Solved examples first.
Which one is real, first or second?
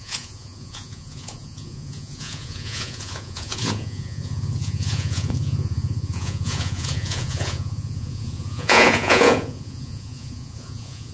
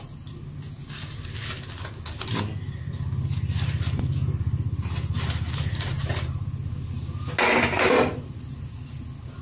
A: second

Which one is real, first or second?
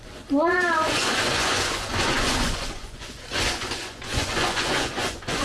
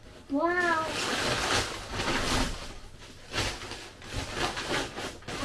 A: second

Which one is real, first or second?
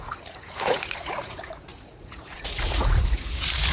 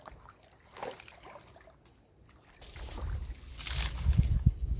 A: second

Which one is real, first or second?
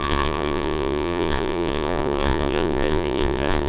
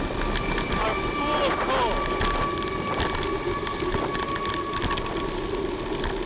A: second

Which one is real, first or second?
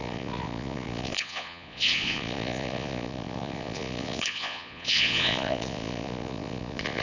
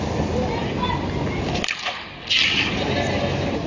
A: second